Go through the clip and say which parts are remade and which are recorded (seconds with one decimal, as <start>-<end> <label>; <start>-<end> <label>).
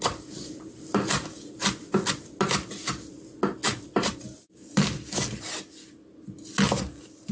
0.0-7.3 recorded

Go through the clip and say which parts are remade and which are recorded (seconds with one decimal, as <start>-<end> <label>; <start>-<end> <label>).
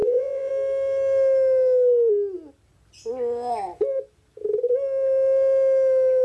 0.0-0.5 remade; 0.5-6.2 recorded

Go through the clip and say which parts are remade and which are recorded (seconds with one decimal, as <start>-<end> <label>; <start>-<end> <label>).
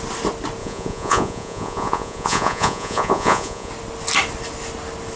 0.0-0.6 recorded; 0.6-3.7 remade; 3.7-5.2 recorded